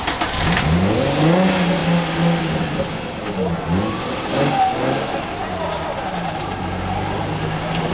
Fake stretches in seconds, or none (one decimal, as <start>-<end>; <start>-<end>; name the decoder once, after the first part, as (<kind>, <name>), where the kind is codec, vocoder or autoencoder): none